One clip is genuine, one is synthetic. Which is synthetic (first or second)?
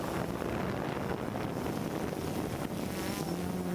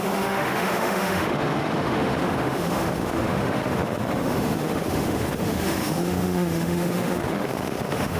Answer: second